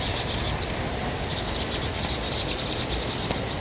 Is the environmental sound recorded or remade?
remade